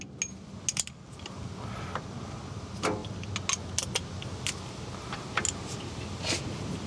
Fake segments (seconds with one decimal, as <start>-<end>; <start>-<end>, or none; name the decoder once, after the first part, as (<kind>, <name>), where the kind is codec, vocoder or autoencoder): none